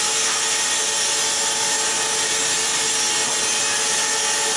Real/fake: real